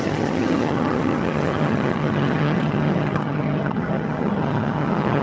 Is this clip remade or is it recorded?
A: remade